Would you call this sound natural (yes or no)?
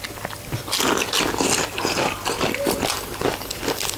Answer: yes